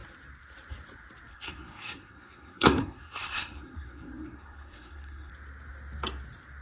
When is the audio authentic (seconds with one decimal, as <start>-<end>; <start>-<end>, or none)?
0.0-1.3; 5.3-6.6